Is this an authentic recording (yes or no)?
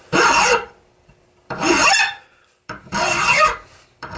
no